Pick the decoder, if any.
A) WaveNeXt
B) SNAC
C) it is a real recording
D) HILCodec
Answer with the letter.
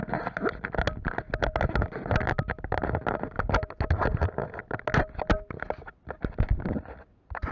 C